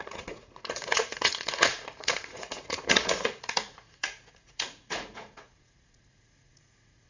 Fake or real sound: fake